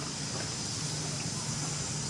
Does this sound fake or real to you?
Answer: real